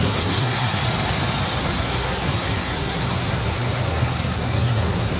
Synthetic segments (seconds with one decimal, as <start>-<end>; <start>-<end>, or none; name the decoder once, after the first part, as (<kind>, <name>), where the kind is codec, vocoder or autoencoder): 0.0-0.8 (codec, SNAC); 1.6-5.2